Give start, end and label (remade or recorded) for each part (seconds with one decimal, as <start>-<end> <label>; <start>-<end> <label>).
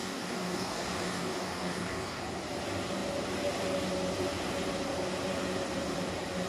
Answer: 0.0-2.2 remade; 2.2-6.5 recorded